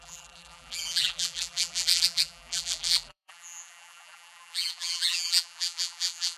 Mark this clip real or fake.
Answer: fake